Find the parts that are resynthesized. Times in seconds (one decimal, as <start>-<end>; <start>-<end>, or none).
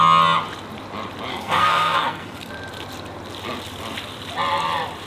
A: 1.3-2.5